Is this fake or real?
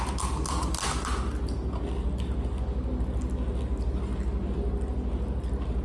real